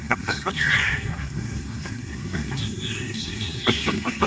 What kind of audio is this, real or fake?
fake